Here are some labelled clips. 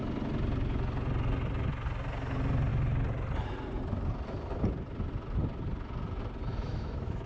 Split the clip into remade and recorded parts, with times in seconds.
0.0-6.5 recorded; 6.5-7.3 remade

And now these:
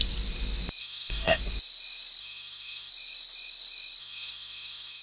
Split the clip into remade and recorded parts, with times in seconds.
0.0-0.8 recorded; 0.8-1.4 remade; 1.4-2.2 recorded; 2.2-2.9 remade; 2.9-4.0 recorded; 4.0-5.0 remade

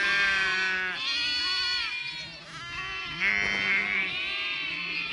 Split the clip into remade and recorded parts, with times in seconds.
0.0-5.1 recorded

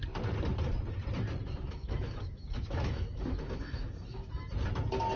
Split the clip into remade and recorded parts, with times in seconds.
0.0-1.4 recorded; 1.4-4.3 remade; 4.3-5.2 recorded

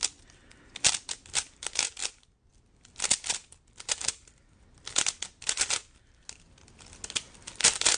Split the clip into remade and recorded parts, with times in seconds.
0.0-8.0 recorded

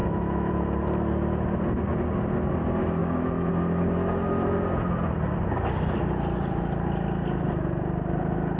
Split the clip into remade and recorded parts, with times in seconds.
0.0-0.5 remade; 0.5-3.0 recorded; 3.0-3.5 remade; 3.5-8.6 recorded

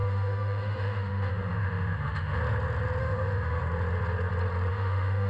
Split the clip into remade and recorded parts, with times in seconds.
0.0-2.4 remade; 2.4-3.0 recorded; 3.0-3.6 remade; 3.6-4.7 recorded; 4.7-5.3 remade